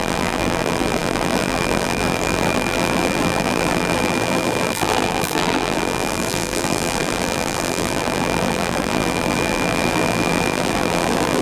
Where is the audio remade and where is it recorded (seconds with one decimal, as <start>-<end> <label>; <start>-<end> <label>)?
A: 0.0-11.4 remade